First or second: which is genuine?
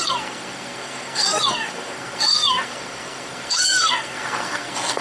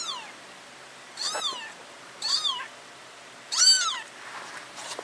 second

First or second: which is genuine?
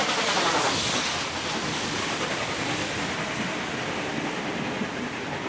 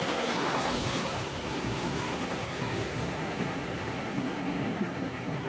first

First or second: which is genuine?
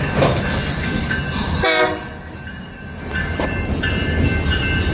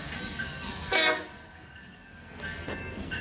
first